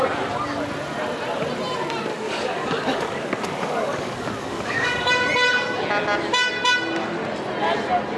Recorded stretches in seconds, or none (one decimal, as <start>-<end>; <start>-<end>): 0.0-2.1; 5.1-8.2